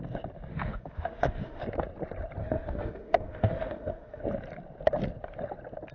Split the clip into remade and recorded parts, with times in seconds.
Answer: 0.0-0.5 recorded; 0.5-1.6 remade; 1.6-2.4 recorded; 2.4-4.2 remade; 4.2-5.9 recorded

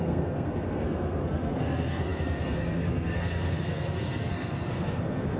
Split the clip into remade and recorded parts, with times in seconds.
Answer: 0.0-5.4 remade

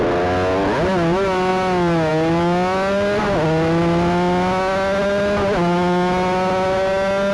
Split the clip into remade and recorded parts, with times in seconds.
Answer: 0.0-7.3 recorded

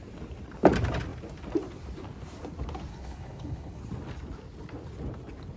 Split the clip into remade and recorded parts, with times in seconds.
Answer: 0.0-2.9 recorded; 2.9-3.8 remade; 3.8-5.6 recorded

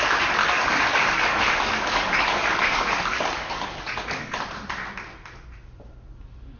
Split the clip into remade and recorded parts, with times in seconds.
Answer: 0.0-0.4 recorded; 0.4-4.4 remade; 4.4-6.6 recorded

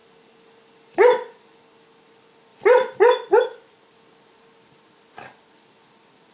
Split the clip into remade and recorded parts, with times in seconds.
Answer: 0.0-1.6 remade; 1.6-2.5 recorded; 2.5-3.8 remade; 3.8-6.3 recorded